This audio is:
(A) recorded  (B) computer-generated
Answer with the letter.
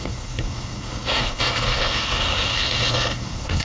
B